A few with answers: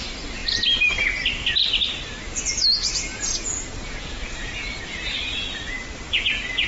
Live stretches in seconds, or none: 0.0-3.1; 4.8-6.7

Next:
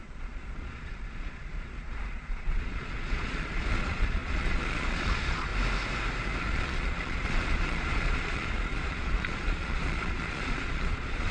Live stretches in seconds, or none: 5.5-6.4

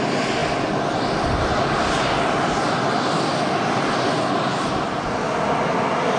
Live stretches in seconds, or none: 0.0-6.2

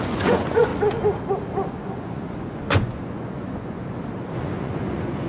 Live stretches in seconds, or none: 0.7-1.7; 3.8-4.4

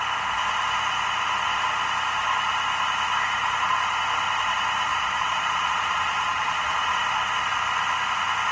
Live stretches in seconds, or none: 0.0-4.9; 7.0-8.5

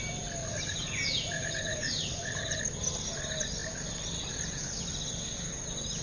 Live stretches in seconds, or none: 0.0-0.4; 2.6-6.0